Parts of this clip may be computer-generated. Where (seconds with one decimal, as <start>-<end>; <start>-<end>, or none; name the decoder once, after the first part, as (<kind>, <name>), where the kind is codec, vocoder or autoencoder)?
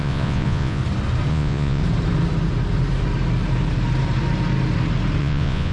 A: 0.0-0.8 (vocoder, Vocos); 1.3-1.8; 5.2-5.7